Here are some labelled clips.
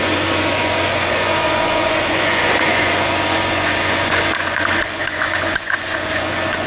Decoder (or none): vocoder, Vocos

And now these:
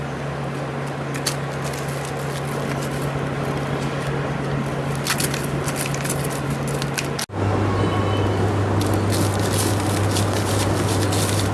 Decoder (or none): none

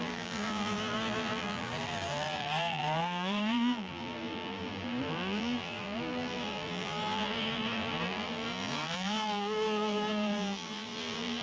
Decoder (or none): vocoder, BigVGAN v2